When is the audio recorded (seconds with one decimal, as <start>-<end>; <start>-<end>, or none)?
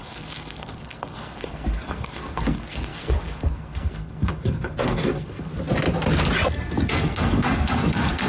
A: 5.5-6.9